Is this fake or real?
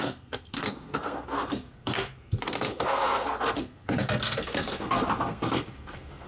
fake